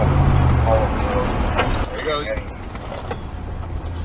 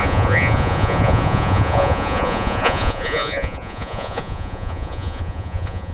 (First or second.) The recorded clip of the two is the first